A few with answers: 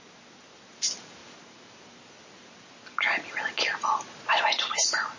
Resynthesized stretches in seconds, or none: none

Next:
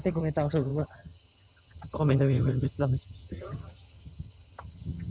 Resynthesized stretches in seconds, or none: 0.0-5.1 (vocoder, HiFi-GAN)

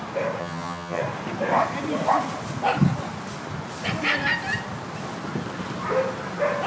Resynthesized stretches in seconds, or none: 0.4-1.0 (vocoder, HiFi-GAN)

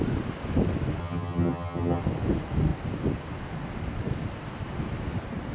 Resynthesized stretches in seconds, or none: 1.0-2.0 (vocoder, HiFi-GAN)

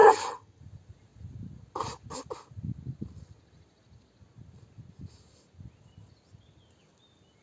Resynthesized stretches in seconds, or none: 0.0-0.6 (vocoder, HiFi-GAN)

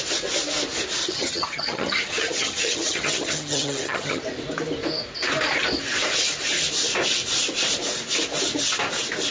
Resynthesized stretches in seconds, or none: 1.0-4.2 (vocoder, HiFi-GAN)

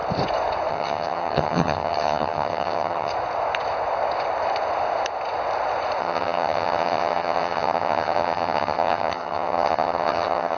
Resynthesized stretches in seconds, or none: 0.7-3.1 (vocoder, HiFi-GAN); 6.0-10.6